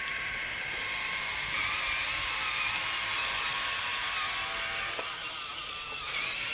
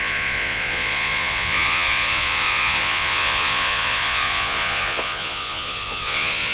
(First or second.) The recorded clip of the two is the first